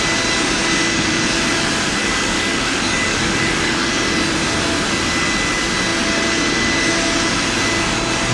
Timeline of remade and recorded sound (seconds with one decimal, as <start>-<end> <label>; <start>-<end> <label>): 0.0-2.0 recorded; 2.0-3.9 remade; 3.9-8.3 recorded